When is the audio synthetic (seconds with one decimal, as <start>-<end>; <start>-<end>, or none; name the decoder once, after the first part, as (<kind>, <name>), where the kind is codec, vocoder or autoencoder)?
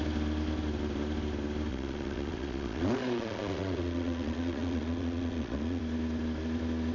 1.7-5.8 (vocoder, Vocos)